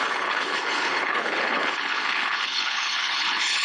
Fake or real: fake